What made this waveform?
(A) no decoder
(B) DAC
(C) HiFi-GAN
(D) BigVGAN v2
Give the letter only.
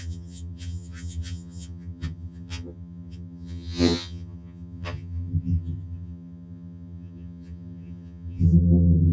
C